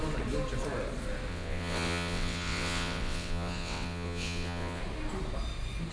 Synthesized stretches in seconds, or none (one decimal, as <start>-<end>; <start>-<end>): 1.3-4.8

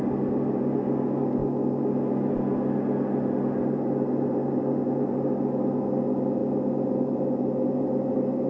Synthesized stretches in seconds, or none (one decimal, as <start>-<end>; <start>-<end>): none

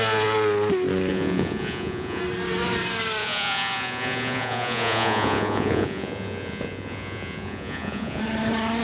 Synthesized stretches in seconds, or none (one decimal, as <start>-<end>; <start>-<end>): 1.1-2.2; 3.2-8.2

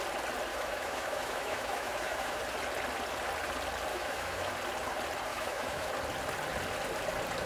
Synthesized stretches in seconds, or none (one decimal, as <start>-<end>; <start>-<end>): 0.5-2.4; 3.9-4.5; 5.3-5.9

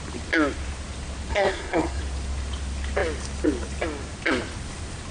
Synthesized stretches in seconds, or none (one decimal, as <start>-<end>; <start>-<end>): 1.3-2.0

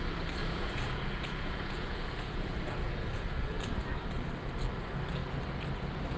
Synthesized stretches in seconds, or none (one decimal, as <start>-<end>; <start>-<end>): 0.4-3.5